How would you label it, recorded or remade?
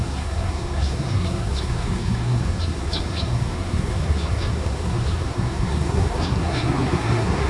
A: remade